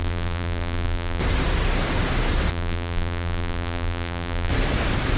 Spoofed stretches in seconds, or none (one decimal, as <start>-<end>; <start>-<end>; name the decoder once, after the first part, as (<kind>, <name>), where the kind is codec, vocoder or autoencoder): 0.0-1.2 (vocoder, BigVGAN v2); 2.5-4.5

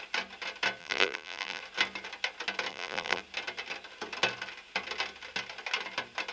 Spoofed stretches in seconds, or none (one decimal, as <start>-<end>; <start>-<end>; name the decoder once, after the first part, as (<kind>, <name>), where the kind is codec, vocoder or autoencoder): 0.8-1.6 (vocoder, BigVGAN v2); 2.7-3.2

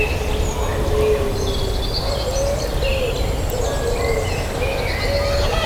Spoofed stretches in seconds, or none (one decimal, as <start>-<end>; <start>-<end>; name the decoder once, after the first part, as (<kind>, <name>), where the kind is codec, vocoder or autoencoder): none

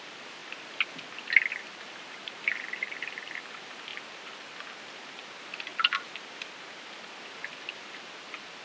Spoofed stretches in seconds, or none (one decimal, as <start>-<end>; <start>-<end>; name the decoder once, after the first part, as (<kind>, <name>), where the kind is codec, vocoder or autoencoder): 0.0-0.4 (vocoder, BigVGAN v2); 1.6-3.9; 5.2-5.7; 7.3-8.6

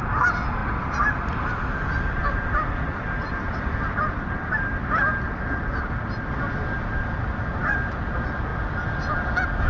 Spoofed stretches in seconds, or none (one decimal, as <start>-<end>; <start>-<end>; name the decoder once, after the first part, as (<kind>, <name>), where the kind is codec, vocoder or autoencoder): 0.6-5.1 (vocoder, BigVGAN v2); 8.5-9.1

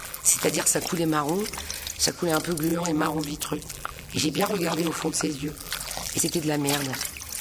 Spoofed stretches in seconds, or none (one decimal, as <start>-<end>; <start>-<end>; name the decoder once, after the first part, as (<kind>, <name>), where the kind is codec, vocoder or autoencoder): 0.0-0.6 (vocoder, BigVGAN v2); 2.7-6.2

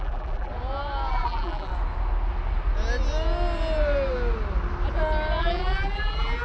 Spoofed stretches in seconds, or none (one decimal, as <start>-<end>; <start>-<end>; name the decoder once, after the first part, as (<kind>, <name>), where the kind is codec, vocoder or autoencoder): 0.0-0.5 (vocoder, BigVGAN v2); 1.1-1.7; 5.4-6.4

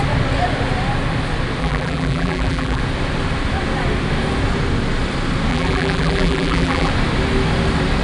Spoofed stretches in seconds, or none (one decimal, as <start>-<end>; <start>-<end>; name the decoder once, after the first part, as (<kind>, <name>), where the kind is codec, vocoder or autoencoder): 1.6-2.8 (vocoder, BigVGAN v2); 5.5-6.9